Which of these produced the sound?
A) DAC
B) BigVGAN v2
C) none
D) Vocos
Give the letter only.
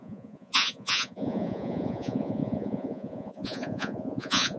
D